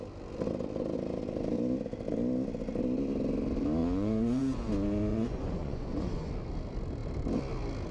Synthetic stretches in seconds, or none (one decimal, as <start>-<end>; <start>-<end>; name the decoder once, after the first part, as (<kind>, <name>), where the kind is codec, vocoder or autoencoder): 3.8-4.4 (vocoder, Vocos); 5.1-6.3